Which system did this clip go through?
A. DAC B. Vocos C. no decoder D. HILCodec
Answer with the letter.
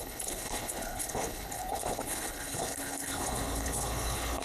D